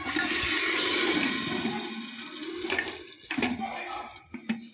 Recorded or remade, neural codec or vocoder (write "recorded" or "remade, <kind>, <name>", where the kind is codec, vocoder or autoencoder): recorded